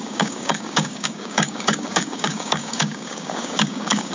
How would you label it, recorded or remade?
remade